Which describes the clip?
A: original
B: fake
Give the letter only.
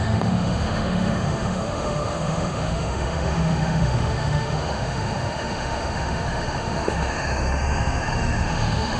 B